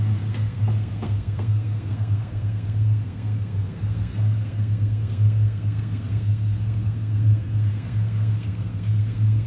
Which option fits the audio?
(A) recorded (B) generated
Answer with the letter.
B